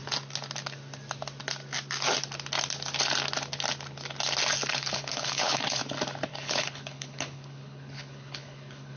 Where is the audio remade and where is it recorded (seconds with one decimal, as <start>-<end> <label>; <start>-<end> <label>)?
0.0-4.7 recorded; 4.7-5.8 remade; 5.8-6.3 recorded; 6.3-9.0 remade

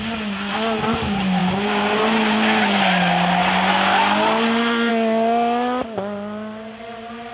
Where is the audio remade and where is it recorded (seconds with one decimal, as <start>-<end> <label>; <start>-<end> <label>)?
0.0-7.3 recorded

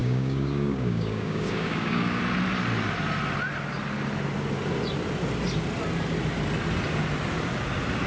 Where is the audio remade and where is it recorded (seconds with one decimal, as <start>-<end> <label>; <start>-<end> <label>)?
0.0-2.2 remade; 2.2-8.1 recorded

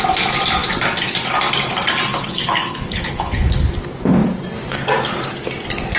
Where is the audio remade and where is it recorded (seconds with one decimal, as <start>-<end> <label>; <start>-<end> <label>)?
0.0-2.1 recorded; 2.1-3.7 remade; 3.7-6.0 recorded

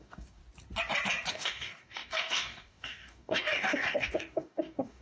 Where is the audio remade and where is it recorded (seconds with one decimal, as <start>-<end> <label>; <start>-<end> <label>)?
0.0-0.4 remade; 0.4-1.3 recorded; 1.3-5.0 remade

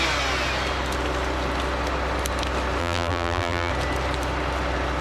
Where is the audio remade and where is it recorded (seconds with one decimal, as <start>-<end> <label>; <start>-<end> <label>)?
0.0-2.8 recorded; 2.8-3.7 remade; 3.7-5.0 recorded